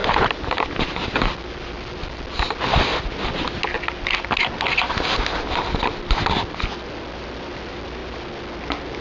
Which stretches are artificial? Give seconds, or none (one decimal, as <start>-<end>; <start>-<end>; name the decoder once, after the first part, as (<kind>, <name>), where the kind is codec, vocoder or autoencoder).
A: none